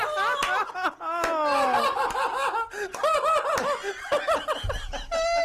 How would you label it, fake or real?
real